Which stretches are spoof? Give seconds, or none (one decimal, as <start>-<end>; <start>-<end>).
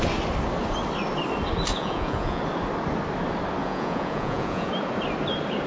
1.7-2.4; 3.6-4.7